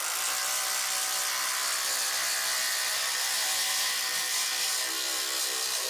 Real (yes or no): yes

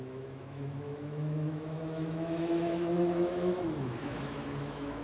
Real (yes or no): no